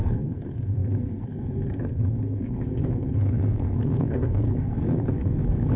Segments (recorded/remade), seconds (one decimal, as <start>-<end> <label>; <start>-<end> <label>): 0.0-5.8 remade